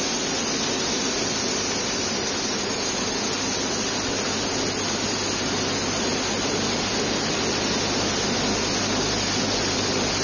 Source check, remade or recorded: recorded